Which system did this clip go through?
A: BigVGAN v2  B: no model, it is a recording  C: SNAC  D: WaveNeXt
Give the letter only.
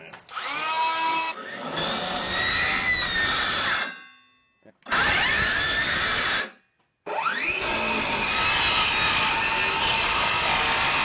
B